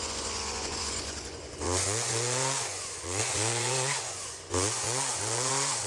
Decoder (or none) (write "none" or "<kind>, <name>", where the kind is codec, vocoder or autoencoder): vocoder, Vocos